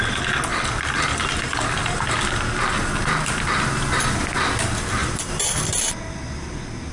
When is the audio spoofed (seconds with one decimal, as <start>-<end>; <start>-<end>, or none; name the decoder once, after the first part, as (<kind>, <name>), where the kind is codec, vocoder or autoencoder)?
5.0-5.6 (vocoder, BigVGAN v2)